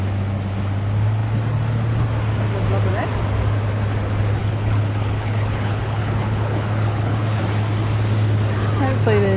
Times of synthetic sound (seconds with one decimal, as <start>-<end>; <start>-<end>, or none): 4.4-7.4